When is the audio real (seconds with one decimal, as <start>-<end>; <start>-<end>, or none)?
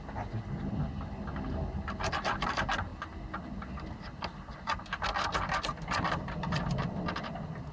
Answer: 0.0-7.7